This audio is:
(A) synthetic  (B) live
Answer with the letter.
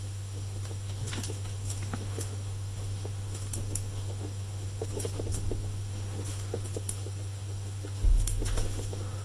A